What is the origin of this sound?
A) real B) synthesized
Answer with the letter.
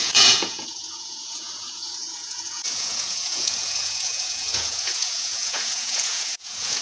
B